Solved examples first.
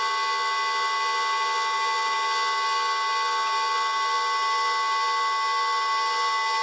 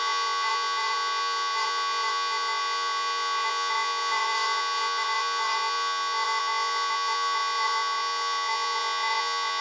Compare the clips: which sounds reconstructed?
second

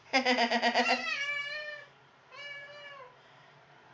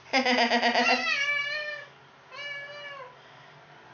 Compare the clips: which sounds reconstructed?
first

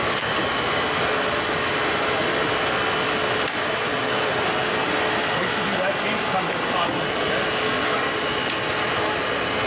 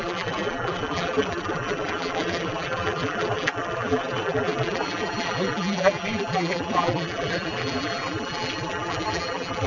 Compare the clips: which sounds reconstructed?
second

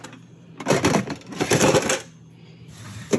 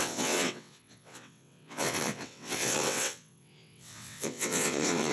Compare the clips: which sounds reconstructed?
second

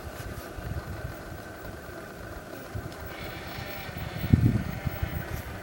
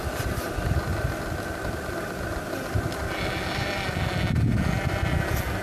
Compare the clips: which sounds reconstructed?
first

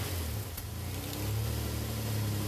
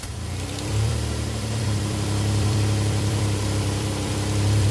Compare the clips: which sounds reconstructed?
second